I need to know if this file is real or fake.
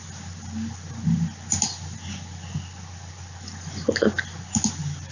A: real